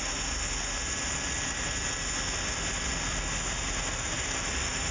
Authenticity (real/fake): real